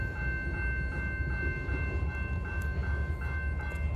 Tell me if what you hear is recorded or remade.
recorded